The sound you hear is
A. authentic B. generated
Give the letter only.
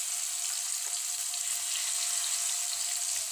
A